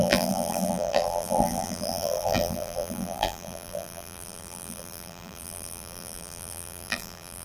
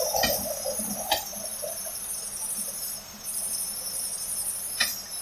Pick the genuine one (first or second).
second